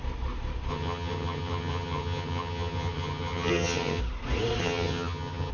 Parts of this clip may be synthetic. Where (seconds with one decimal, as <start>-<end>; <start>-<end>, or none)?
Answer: 0.7-4.0; 4.6-5.5